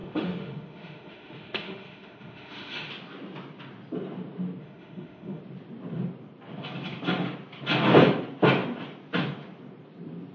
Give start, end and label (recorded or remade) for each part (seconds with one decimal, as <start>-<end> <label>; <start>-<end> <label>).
0.0-2.9 remade; 2.9-4.6 recorded; 4.6-5.4 remade; 5.4-10.3 recorded